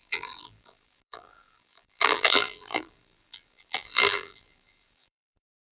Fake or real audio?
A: fake